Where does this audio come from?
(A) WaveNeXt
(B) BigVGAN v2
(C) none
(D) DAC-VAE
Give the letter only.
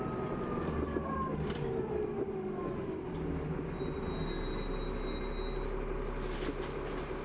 C